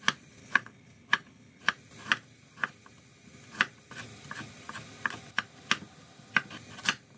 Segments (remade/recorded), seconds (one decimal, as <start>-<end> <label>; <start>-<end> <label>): 0.0-0.4 recorded; 0.4-1.6 remade; 1.6-7.2 recorded